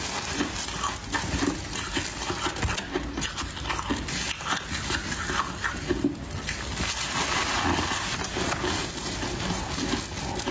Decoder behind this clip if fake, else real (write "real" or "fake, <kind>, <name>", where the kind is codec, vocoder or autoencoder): real